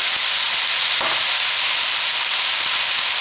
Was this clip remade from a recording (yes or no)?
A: no